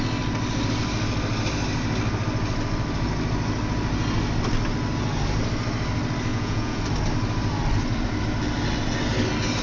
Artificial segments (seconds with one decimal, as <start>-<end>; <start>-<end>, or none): 6.3-6.8